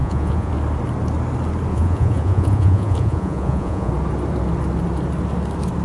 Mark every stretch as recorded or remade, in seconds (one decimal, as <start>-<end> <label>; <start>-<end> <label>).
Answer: 0.0-0.5 remade; 0.5-1.7 recorded; 1.7-3.9 remade; 3.9-5.8 recorded